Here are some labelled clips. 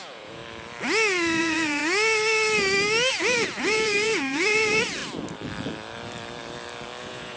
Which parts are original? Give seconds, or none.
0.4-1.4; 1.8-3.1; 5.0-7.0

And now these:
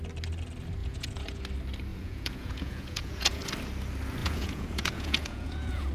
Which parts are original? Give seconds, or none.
0.0-0.8; 1.4-1.9; 3.4-4.2

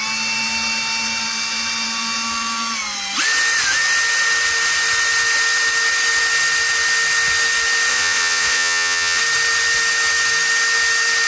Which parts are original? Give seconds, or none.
0.0-7.9; 9.2-11.3

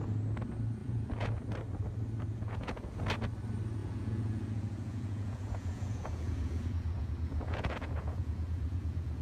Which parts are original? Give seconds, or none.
0.0-0.8; 1.4-2.3; 3.0-3.8

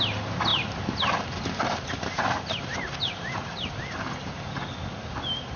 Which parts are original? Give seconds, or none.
0.0-5.6